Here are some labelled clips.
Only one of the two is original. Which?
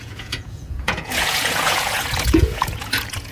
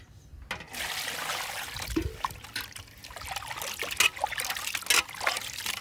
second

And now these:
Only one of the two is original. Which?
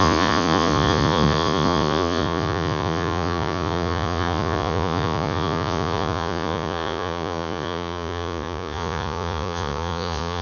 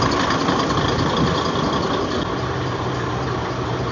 second